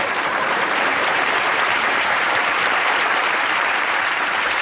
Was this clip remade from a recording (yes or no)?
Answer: yes